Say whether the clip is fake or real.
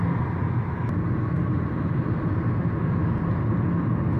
real